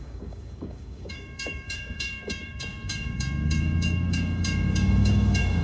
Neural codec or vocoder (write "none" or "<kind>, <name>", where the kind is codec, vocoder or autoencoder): codec, DAC